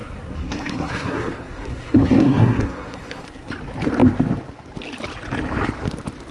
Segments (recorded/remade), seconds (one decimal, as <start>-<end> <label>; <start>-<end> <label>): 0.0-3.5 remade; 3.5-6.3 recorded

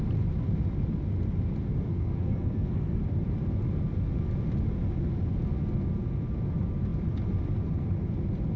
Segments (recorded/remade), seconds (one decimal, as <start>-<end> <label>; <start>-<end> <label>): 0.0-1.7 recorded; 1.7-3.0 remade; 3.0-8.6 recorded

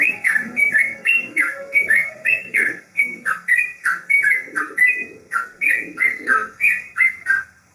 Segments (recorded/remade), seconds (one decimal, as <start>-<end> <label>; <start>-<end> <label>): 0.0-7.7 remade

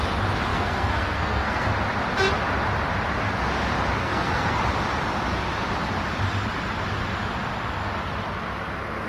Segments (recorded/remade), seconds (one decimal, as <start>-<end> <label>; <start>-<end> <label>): 0.0-0.5 recorded; 0.5-1.7 remade; 1.7-4.0 recorded; 4.0-4.6 remade; 4.6-9.1 recorded

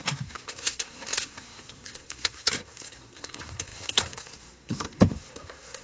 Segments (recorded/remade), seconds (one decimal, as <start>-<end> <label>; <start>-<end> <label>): 0.0-5.8 remade